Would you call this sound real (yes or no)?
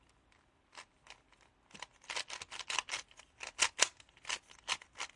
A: yes